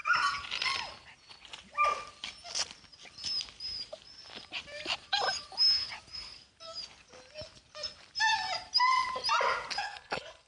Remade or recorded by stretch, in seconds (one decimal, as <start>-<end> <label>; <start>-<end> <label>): 0.0-9.8 recorded; 9.8-10.5 remade